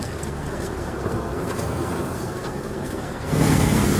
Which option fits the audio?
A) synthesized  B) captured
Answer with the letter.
A